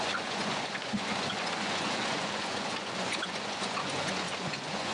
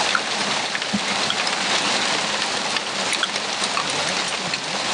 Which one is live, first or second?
second